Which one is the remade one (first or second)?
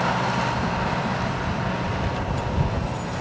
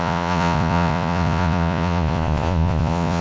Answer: second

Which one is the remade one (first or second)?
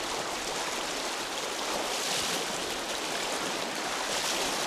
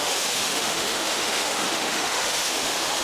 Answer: second